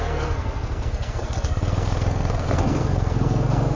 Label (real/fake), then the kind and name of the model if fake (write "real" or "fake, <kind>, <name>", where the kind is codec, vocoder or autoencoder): fake, codec, SNAC